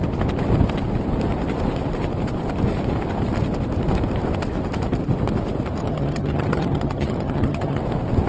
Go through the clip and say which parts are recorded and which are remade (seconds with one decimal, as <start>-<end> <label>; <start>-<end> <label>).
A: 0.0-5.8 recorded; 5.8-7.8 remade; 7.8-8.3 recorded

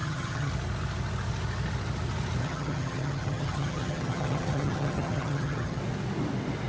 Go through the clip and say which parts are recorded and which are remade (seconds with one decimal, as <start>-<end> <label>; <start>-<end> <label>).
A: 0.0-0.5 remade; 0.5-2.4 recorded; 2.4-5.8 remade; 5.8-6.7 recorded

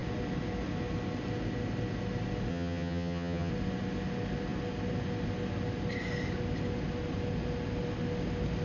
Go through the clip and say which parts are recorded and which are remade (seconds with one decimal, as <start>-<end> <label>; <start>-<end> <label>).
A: 0.0-2.5 recorded; 2.5-3.5 remade; 3.5-8.6 recorded

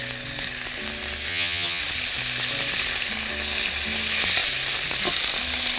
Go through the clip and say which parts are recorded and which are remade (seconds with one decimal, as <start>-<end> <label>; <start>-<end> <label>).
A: 0.0-1.3 recorded; 1.3-1.8 remade; 1.8-5.8 recorded

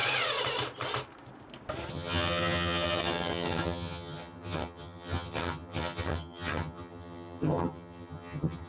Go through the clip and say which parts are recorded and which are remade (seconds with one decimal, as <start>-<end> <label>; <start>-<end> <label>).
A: 0.0-1.9 recorded; 1.9-8.7 remade

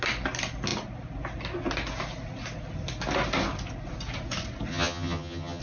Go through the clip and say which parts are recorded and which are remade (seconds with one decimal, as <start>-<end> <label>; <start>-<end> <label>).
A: 0.0-4.7 recorded; 4.7-5.6 remade